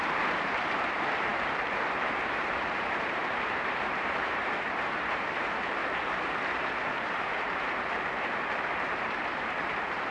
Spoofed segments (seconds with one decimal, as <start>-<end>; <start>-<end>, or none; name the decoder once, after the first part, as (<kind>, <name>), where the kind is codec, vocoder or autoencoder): 0.0-5.8 (vocoder, BigVGAN v2); 6.9-10.1